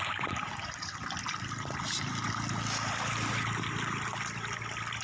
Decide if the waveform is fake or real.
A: fake